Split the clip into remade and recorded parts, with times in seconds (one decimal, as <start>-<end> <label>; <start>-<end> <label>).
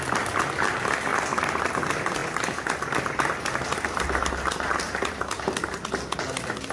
0.0-6.7 recorded